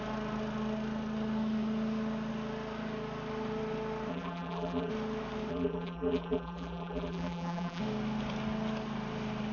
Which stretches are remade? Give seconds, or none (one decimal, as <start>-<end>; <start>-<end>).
4.1-4.9; 5.5-7.8